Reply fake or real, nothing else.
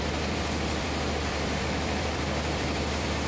fake